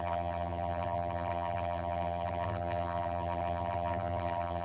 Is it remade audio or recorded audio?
remade